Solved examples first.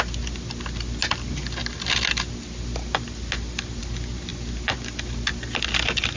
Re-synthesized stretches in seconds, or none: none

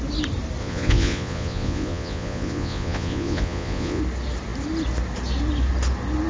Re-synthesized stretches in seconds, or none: 0.6-4.0 (vocoder, Vocos)

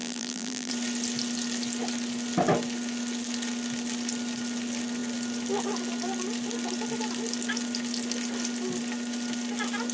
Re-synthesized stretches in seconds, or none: 0.0-0.7 (vocoder, BigVGAN v2)